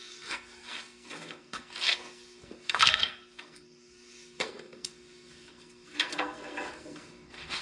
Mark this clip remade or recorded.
remade